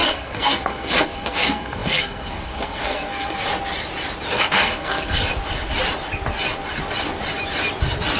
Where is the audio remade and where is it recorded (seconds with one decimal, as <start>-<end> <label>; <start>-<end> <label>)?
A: 0.0-3.5 remade; 3.5-4.3 recorded; 4.3-5.3 remade; 5.3-8.2 recorded